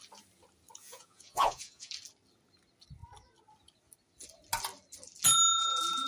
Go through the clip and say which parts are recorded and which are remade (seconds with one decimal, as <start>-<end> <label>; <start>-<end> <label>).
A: 0.0-0.8 recorded; 0.8-1.9 remade; 1.9-6.1 recorded